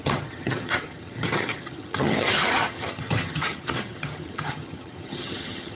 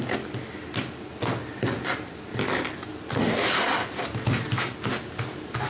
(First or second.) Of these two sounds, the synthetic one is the first